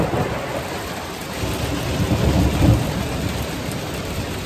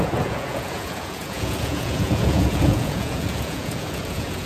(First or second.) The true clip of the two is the first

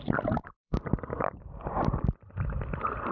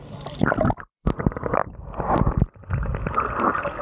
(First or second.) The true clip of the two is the second